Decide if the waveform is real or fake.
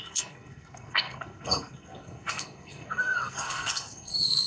fake